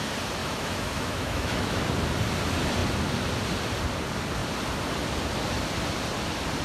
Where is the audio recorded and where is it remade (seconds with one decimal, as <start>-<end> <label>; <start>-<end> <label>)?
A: 0.0-0.4 recorded; 0.4-1.8 remade; 1.8-6.6 recorded